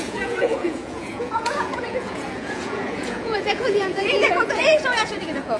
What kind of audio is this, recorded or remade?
remade